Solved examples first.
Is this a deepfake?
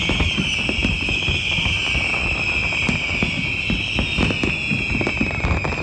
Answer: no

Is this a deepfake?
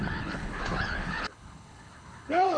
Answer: yes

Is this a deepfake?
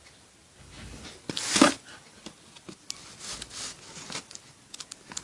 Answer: no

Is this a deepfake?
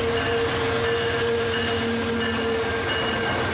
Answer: no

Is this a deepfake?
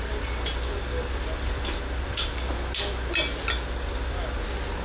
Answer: no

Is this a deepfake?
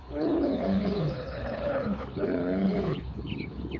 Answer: yes